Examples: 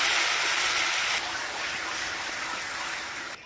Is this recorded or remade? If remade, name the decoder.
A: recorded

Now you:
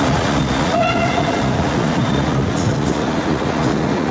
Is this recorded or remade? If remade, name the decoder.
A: remade, vocoder, Vocos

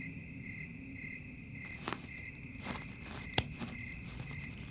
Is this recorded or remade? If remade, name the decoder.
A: recorded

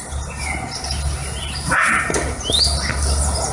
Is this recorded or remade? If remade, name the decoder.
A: recorded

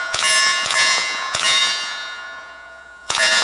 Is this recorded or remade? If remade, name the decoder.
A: remade, vocoder, Vocos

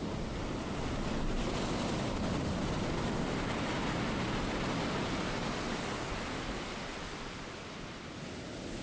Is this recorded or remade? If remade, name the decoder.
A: recorded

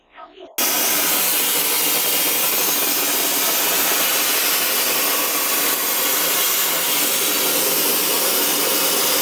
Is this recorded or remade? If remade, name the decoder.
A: recorded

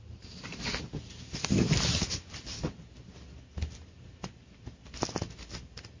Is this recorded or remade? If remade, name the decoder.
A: recorded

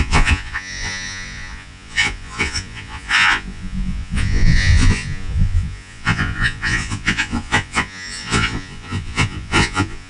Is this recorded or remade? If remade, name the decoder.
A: remade, vocoder, Vocos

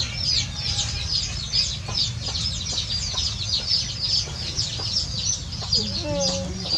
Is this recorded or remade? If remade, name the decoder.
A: recorded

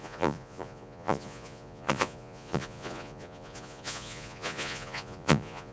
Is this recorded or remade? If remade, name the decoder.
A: remade, vocoder, Vocos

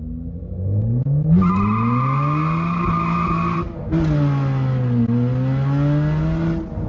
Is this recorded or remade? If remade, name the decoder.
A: recorded